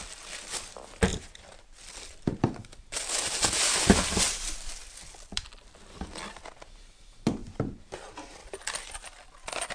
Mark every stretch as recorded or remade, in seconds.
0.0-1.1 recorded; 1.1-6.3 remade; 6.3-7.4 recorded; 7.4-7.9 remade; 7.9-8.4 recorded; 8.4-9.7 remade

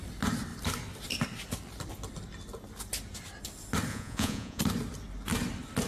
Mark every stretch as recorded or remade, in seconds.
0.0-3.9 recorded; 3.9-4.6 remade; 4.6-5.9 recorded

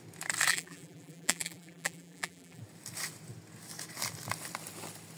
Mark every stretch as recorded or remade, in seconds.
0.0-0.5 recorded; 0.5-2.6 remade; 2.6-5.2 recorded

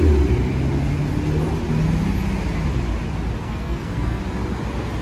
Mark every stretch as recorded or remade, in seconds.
0.0-3.4 recorded; 3.4-4.2 remade; 4.2-5.0 recorded

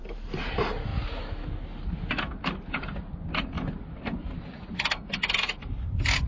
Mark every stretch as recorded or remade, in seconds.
0.0-6.3 recorded